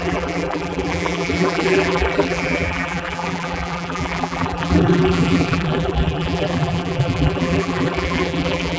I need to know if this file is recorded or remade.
remade